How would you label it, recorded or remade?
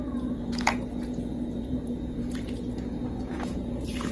remade